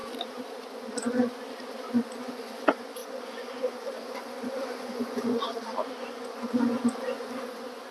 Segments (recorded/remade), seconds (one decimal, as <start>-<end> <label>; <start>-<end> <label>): 0.0-2.2 recorded; 2.2-5.5 remade; 5.5-6.0 recorded; 6.0-7.9 remade